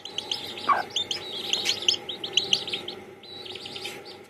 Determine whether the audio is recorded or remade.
recorded